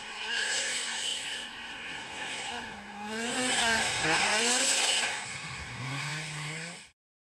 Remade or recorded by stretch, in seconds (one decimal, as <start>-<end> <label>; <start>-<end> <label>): 0.0-7.3 remade